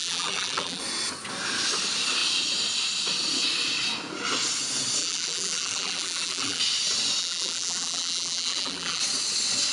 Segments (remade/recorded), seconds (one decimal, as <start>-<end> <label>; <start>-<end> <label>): 0.0-0.8 remade; 0.8-5.0 recorded; 5.0-6.6 remade; 6.6-7.2 recorded; 7.2-9.0 remade; 9.0-9.7 recorded